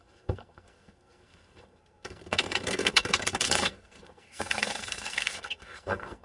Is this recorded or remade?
remade